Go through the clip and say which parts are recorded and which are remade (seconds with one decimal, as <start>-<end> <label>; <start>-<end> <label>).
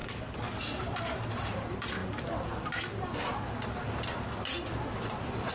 0.0-0.6 remade; 0.6-5.5 recorded